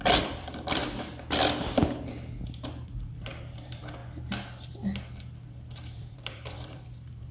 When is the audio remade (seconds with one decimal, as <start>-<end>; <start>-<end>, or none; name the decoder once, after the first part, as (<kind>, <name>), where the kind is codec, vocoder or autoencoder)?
0.0-0.8 (vocoder, BigVGAN v2); 2.7-4.0; 5.9-7.3